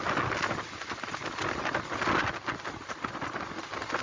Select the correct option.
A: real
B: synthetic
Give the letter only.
A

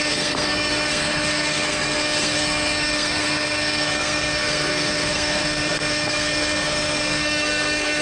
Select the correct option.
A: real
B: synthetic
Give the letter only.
B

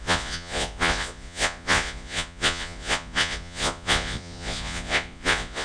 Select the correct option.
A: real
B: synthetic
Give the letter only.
B